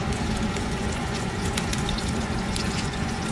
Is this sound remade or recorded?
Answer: remade